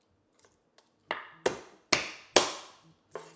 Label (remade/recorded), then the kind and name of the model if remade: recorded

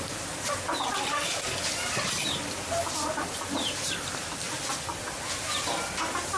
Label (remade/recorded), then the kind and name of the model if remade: remade, vocoder, BigVGAN v2